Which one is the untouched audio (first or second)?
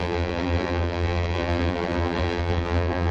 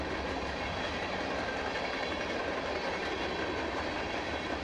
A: second